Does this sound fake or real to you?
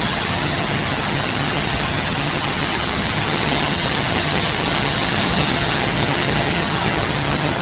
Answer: fake